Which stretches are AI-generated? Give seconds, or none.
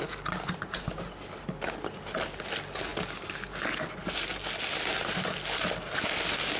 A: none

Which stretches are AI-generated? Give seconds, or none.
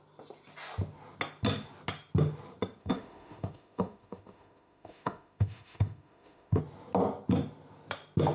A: 2.8-6.6 (autoencoder, DAC-VAE)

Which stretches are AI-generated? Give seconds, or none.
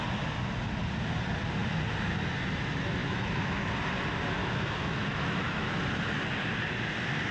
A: 3.0-3.7 (autoencoder, DAC-VAE); 4.4-5.7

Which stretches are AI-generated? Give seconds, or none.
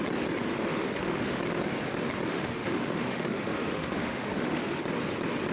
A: 0.5-1.4 (autoencoder, DAC-VAE); 2.3-4.8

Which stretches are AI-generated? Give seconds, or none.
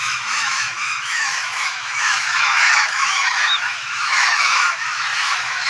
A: 0.0-5.7 (autoencoder, DAC-VAE)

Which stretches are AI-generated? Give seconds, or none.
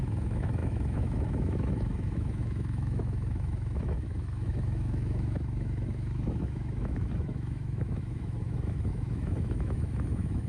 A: 0.0-10.5 (autoencoder, DAC-VAE)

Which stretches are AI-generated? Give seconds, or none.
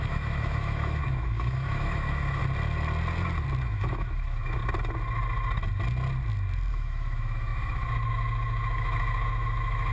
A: 0.0-2.4 (autoencoder, DAC-VAE); 3.6-4.6; 6.7-9.9